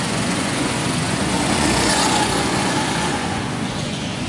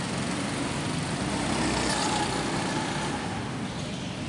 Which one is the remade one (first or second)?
first